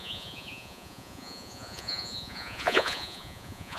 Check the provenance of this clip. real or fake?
fake